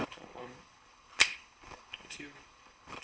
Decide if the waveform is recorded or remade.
remade